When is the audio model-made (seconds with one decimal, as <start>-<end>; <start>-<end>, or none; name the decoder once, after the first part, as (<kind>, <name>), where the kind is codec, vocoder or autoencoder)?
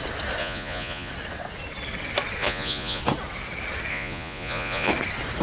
0.4-1.1 (vocoder, Vocos); 2.4-3.0; 3.9-4.9